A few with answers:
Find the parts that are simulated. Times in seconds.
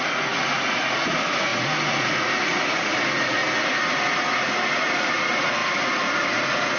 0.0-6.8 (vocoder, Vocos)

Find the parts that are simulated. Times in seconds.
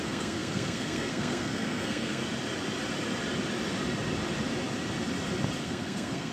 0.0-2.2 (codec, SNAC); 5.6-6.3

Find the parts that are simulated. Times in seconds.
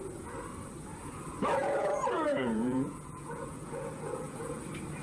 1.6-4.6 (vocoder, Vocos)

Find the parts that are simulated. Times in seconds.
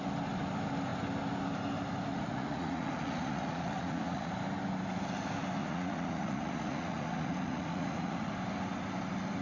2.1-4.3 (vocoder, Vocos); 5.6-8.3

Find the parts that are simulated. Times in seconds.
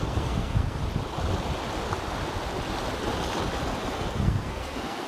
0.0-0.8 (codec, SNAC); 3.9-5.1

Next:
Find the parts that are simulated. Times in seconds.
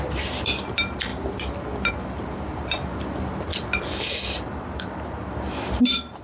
0.0-1.1 (vocoder, BigVGAN v2); 1.9-3.5; 4.0-6.2